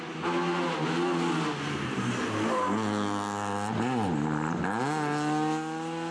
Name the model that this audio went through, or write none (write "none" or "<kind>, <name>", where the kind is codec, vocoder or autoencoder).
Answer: none